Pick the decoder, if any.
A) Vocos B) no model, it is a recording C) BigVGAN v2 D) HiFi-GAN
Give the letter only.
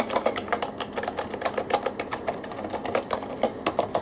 B